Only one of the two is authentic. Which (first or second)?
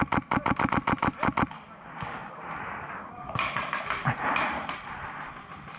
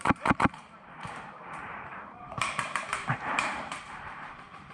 first